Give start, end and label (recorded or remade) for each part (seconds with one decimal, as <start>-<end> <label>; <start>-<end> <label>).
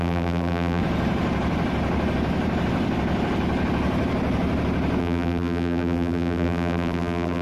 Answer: 0.0-0.8 remade; 0.8-5.0 recorded; 5.0-7.4 remade